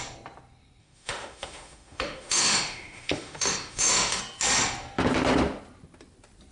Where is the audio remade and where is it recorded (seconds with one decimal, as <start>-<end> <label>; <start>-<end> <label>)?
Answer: 0.0-0.8 recorded; 0.8-4.2 remade; 4.2-6.5 recorded